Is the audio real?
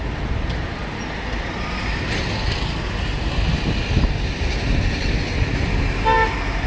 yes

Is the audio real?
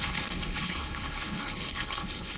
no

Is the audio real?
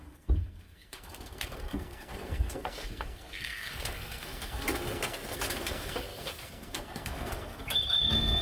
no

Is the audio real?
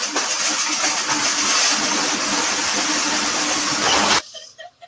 yes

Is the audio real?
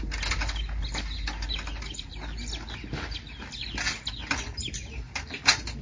yes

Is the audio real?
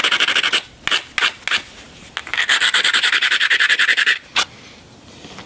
yes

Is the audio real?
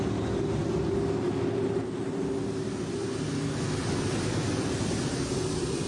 yes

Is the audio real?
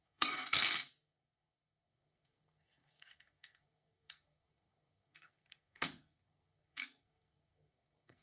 no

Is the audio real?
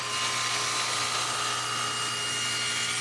yes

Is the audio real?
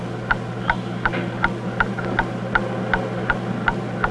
yes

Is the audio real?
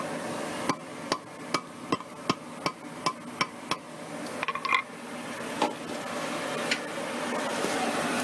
yes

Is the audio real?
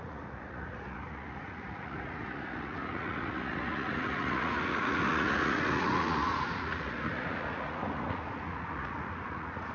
no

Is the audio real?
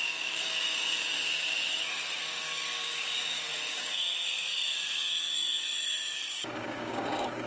no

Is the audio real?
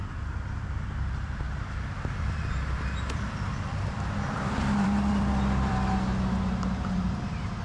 no